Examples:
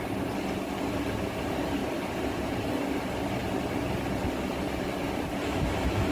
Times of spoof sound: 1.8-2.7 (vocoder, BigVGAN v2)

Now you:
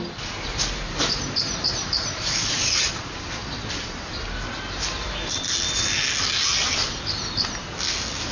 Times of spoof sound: 0.5-2.6 (vocoder, BigVGAN v2)

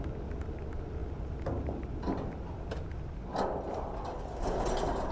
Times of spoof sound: none

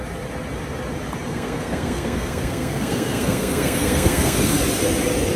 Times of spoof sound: 1.3-4.5 (codec, SNAC)